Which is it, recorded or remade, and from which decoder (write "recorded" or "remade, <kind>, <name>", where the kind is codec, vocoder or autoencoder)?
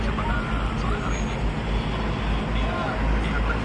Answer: recorded